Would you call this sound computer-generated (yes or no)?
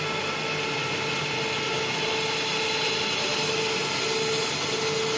no